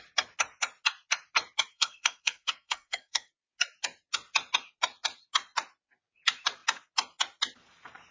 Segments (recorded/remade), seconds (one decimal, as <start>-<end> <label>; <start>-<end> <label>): 0.0-1.7 recorded; 1.7-3.3 remade; 3.3-8.1 recorded